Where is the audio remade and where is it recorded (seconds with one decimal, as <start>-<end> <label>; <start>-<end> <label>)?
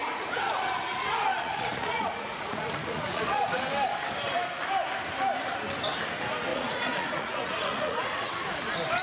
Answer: 0.0-3.6 remade; 3.6-6.5 recorded; 6.5-8.3 remade; 8.3-9.0 recorded